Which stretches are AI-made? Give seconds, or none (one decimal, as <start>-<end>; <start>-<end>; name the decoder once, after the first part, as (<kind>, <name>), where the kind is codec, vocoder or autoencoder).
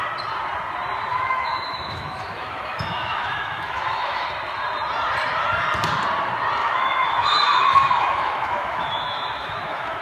1.1-4.2 (autoencoder, DAC-VAE); 6.6-10.0